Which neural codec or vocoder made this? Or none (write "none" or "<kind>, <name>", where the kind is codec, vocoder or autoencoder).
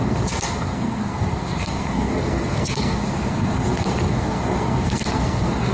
codec, SNAC